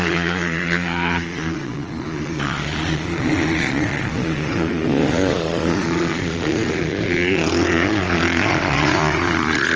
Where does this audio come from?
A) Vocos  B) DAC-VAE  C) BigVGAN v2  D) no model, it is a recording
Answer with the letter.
A